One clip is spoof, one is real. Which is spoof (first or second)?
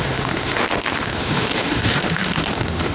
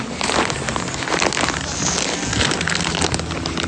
first